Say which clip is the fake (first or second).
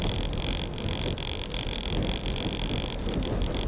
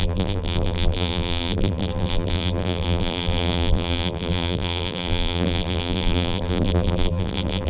second